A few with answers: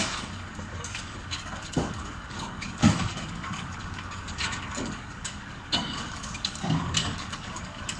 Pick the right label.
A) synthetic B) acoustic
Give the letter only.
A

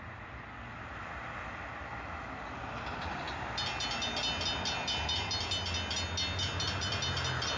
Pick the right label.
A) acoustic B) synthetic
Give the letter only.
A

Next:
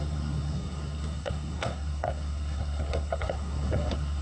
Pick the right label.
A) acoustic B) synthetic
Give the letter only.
B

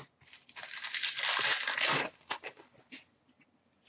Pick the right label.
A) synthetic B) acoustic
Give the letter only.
B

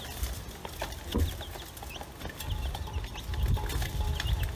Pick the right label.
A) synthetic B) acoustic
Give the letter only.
B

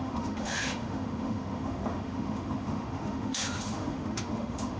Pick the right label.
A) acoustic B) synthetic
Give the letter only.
B